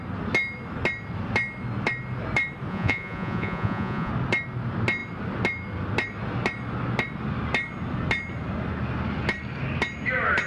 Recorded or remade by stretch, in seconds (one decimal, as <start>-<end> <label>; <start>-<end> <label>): 0.0-2.7 recorded; 2.7-4.1 remade; 4.1-10.5 recorded